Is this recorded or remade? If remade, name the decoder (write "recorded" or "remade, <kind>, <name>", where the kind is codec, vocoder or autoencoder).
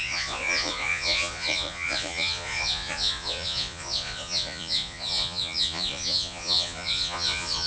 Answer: remade, vocoder, Vocos